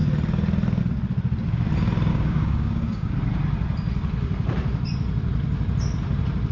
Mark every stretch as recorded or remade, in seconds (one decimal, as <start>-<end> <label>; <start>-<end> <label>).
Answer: 0.0-2.1 recorded; 2.1-3.1 remade; 3.1-6.5 recorded